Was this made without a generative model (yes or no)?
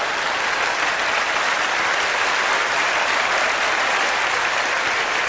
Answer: yes